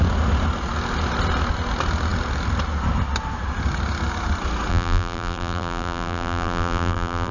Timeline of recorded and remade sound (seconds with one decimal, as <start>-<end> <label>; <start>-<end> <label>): 0.0-4.7 recorded; 4.7-7.3 remade